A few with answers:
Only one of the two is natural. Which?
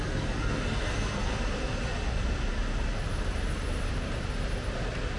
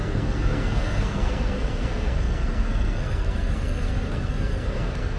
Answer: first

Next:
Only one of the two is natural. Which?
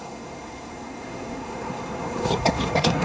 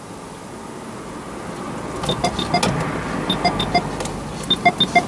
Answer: second